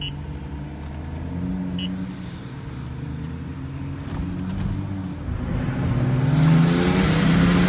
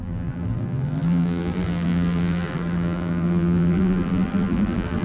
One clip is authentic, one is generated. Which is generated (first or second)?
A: second